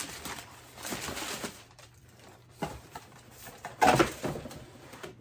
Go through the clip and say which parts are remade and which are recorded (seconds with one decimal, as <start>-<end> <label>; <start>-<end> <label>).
0.0-5.2 remade